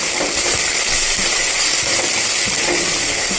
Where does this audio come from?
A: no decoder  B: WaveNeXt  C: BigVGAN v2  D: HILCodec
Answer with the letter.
A